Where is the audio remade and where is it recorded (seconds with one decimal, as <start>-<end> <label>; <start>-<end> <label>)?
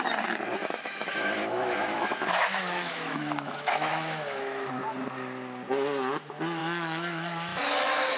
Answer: 0.0-0.6 recorded; 0.6-4.7 remade; 4.7-6.6 recorded; 6.6-8.2 remade